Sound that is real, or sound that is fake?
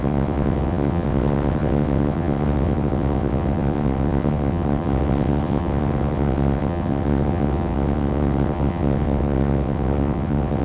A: fake